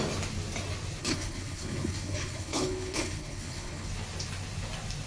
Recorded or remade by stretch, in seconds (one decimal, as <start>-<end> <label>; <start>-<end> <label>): 0.0-1.0 recorded; 1.0-3.9 remade; 3.9-5.1 recorded